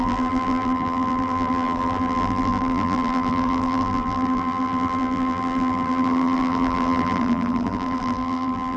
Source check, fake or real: fake